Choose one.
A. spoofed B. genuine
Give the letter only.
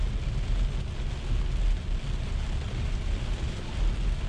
B